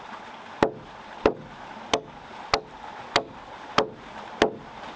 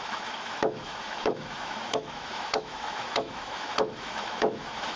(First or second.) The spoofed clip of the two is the second